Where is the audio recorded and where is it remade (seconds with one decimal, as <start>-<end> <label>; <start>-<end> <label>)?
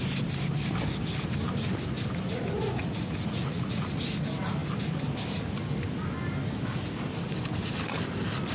0.0-2.8 recorded; 2.8-4.0 remade; 4.0-8.5 recorded